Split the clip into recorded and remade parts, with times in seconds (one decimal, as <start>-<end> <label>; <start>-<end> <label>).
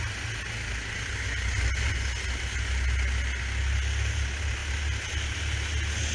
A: 0.0-6.1 recorded